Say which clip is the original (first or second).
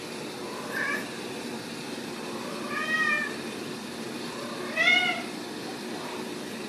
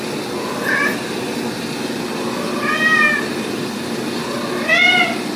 second